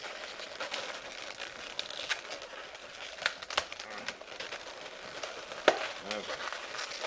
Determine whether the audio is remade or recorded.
recorded